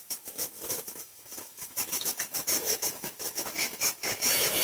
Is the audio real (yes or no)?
no